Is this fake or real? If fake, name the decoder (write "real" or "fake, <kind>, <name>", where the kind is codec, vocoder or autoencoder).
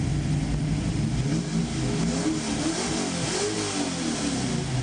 real